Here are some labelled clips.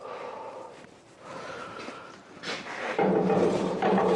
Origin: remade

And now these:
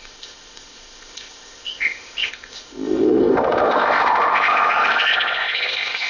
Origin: remade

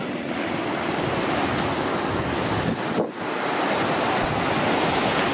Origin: recorded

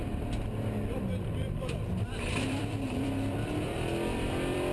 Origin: remade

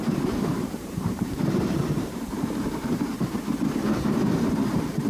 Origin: remade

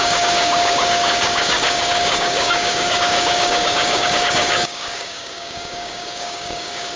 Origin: remade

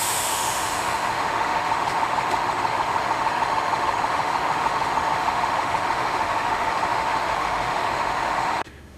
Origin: remade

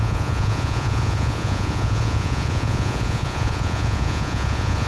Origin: remade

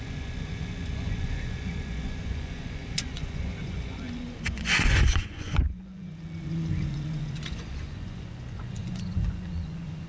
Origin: remade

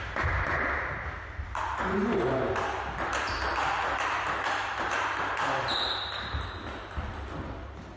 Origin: recorded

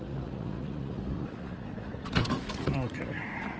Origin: remade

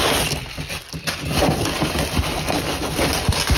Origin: recorded